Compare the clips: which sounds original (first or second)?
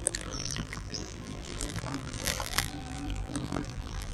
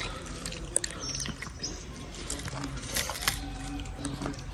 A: second